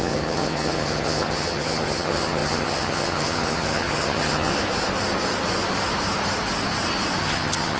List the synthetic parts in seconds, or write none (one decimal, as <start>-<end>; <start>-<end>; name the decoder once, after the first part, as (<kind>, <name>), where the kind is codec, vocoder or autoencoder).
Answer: 0.0-4.5 (vocoder, HiFi-GAN); 7.2-7.8